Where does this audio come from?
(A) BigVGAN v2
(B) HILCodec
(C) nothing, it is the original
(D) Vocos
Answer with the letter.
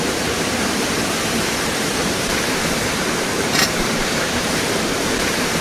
A